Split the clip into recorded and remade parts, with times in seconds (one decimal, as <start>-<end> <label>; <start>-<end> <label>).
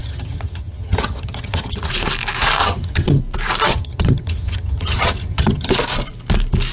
0.0-1.9 remade; 1.9-2.6 recorded; 2.6-3.2 remade; 3.2-3.7 recorded; 3.7-5.7 remade; 5.7-6.7 recorded